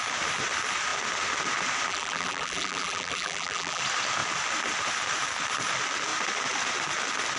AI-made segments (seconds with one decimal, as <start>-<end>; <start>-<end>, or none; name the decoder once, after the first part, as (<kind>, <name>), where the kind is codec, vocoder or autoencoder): 1.9-3.8 (vocoder, BigVGAN v2)